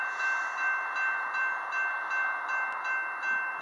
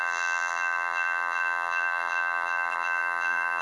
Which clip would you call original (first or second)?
first